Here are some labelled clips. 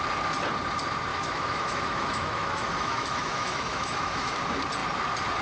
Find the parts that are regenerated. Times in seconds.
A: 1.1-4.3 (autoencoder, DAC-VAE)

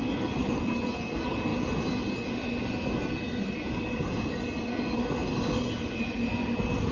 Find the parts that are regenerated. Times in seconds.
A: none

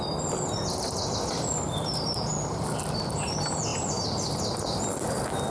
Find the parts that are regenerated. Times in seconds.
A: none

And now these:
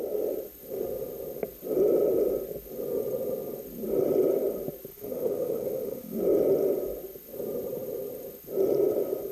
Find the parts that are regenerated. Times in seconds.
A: 4.9-6.2 (autoencoder, DAC-VAE)

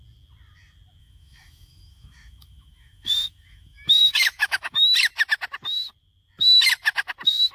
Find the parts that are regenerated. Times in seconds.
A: 1.0-5.0 (autoencoder, DAC-VAE)

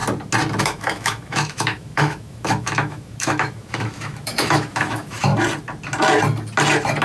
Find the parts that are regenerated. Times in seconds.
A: 0.6-5.3 (autoencoder, DAC-VAE)

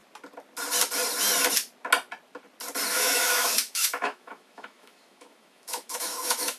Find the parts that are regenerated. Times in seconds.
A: 2.9-6.6 (autoencoder, DAC-VAE)